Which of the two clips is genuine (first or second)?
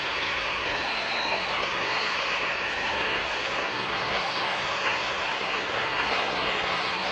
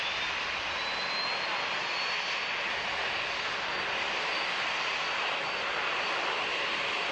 second